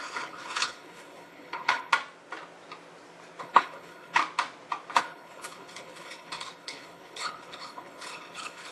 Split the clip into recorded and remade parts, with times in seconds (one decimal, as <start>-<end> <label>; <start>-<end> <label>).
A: 0.0-1.9 remade; 1.9-3.4 recorded; 3.4-4.2 remade; 4.2-5.0 recorded; 5.0-8.7 remade